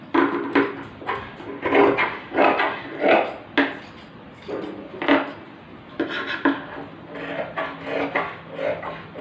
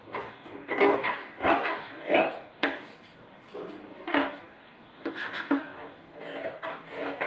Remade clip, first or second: second